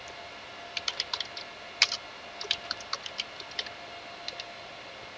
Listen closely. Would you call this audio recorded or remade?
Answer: recorded